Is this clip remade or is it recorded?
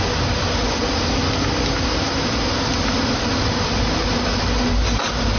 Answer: recorded